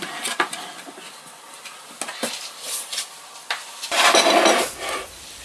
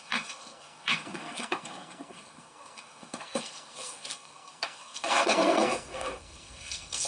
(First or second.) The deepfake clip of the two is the second